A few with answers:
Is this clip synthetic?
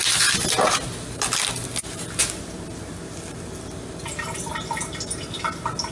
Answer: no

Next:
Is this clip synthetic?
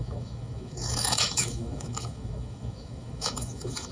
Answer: yes